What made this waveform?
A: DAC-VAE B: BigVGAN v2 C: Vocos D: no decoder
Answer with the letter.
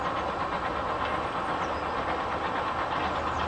D